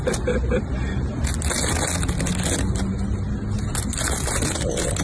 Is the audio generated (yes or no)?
no